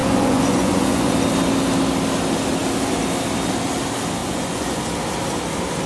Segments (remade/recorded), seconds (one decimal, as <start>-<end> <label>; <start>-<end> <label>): 0.0-1.1 remade; 1.1-4.2 recorded; 4.2-4.8 remade; 4.8-5.9 recorded